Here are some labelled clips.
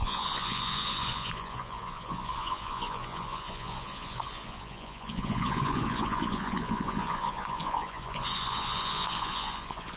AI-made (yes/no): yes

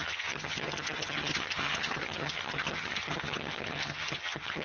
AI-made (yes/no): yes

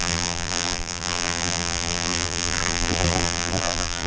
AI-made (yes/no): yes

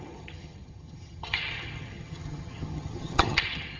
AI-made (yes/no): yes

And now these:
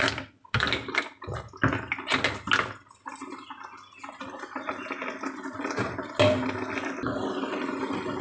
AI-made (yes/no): no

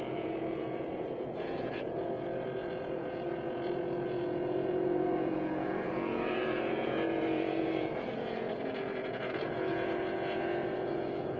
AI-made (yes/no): yes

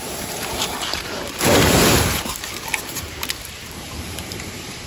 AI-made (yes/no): yes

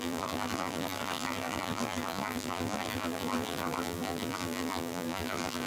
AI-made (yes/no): yes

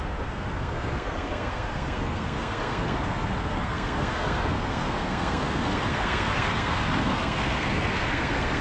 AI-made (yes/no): yes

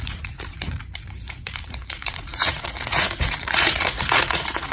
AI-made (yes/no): yes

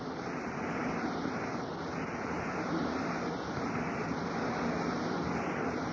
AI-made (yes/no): no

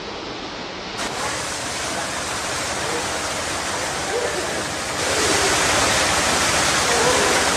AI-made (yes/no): no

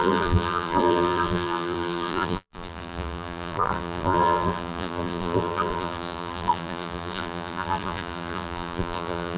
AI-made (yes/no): yes